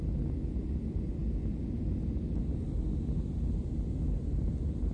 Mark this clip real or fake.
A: real